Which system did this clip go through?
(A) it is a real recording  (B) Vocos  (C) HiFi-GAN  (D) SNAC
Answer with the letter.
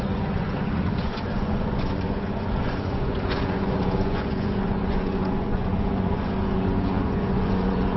B